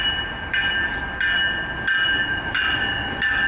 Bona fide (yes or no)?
yes